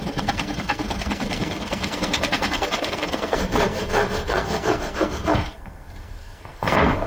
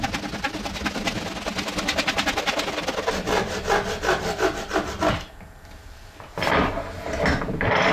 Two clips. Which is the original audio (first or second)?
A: second